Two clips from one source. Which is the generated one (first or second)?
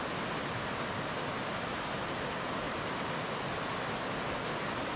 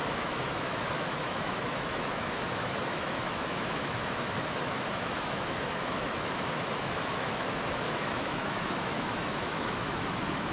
second